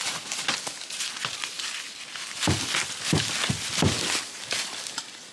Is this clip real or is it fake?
real